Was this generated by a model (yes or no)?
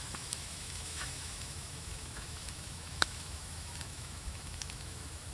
yes